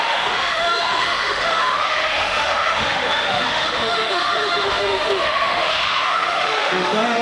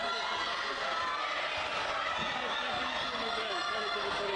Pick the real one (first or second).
second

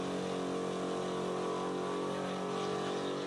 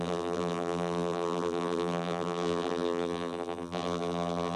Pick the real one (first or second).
first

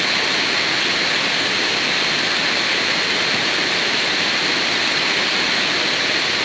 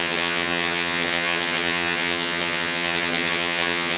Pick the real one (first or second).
first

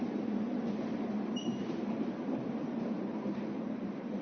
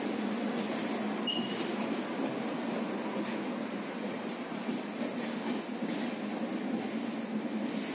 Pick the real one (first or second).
second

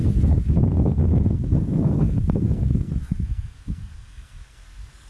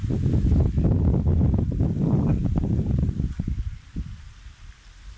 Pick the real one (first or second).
second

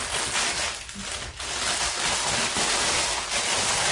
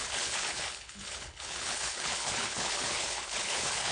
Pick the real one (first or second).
first